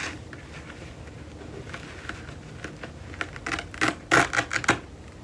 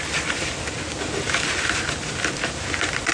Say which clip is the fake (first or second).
second